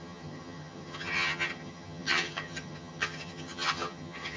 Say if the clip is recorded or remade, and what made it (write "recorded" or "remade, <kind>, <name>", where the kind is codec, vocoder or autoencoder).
remade, vocoder, HiFi-GAN